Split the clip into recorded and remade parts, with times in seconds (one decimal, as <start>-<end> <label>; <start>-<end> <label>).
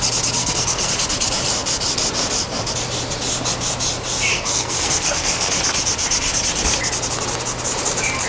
0.0-0.4 recorded; 0.4-0.9 remade; 0.9-4.3 recorded; 4.3-5.5 remade; 5.5-8.3 recorded